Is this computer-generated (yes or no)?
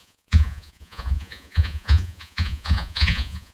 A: yes